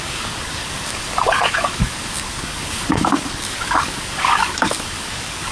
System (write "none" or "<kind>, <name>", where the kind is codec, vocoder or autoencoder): codec, DAC